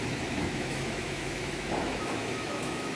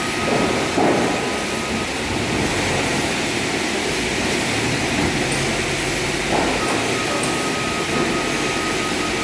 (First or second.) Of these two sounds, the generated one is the first